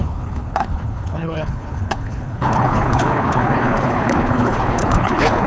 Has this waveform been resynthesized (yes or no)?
yes